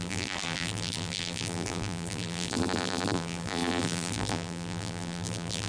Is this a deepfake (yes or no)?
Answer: yes